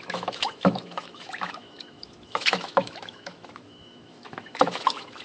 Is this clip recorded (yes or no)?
no